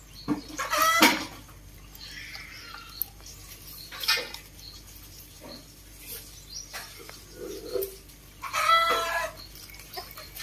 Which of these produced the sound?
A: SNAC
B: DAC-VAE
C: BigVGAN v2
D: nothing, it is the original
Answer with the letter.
D